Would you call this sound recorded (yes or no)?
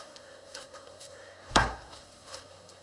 no